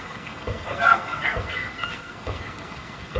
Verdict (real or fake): fake